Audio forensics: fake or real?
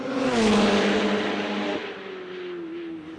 real